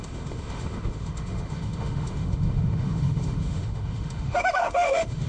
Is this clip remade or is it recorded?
remade